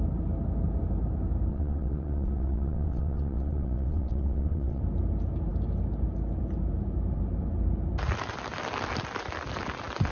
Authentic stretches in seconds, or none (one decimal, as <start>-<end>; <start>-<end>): 0.0-1.5; 4.8-10.1